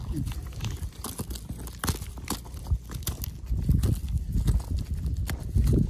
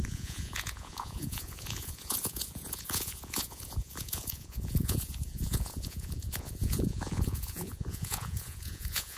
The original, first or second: first